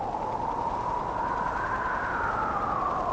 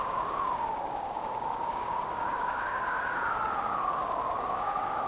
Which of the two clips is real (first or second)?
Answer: first